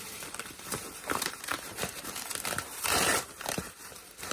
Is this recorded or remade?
remade